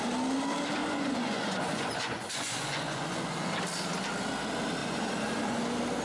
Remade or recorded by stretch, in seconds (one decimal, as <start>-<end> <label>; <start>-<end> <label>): 0.0-0.8 recorded; 0.8-3.5 remade; 3.5-4.8 recorded; 4.8-5.6 remade; 5.6-6.0 recorded